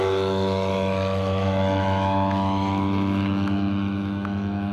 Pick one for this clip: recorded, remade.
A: remade